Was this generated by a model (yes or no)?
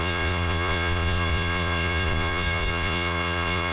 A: yes